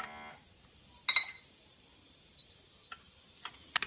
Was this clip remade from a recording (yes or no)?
no